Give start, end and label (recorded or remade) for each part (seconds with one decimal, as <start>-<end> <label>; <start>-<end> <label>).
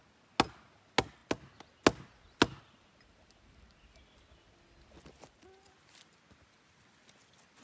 0.0-7.6 recorded